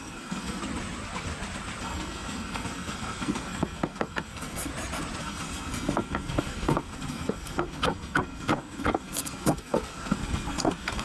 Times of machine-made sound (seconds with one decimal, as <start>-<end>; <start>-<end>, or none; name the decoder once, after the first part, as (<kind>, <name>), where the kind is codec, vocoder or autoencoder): 0.0-0.6 (codec, SNAC); 1.8-4.7; 5.2-11.0